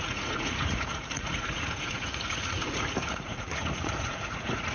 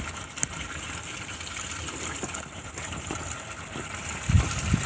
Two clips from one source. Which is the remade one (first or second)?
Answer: first